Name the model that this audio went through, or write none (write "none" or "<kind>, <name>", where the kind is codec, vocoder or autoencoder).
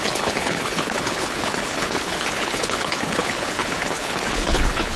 codec, HILCodec